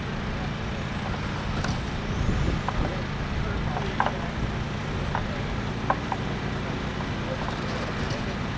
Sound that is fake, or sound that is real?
real